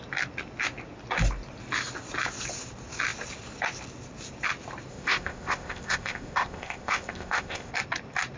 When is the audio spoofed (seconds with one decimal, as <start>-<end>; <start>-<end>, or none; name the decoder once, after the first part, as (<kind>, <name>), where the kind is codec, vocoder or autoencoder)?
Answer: 4.9-7.7 (codec, ZipCodec)